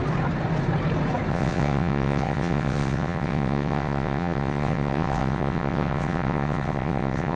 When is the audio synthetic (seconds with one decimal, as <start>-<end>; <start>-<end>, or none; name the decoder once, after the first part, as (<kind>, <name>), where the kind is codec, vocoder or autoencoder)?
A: 1.3-7.4 (vocoder, WaveNeXt)